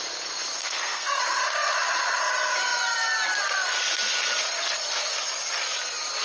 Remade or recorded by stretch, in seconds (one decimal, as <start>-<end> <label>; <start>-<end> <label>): 0.0-0.6 recorded; 0.6-1.2 remade; 1.2-6.2 recorded